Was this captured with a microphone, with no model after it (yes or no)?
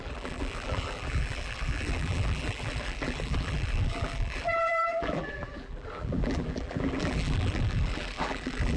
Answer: no